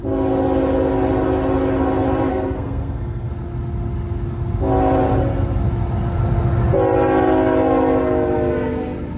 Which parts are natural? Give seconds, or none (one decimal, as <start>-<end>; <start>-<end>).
0.0-2.3; 3.3-9.2